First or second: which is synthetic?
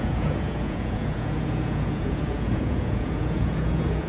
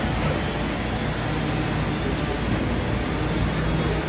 first